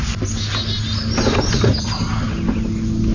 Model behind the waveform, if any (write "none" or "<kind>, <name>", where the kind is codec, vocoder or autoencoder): none